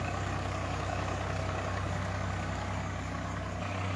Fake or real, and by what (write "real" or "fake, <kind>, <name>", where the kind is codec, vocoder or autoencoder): fake, codec, DAC